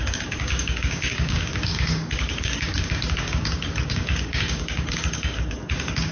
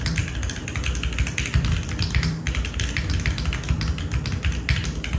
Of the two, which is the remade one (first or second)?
first